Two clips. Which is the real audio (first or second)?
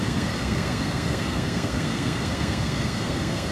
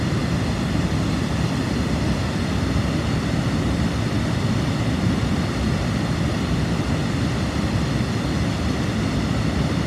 second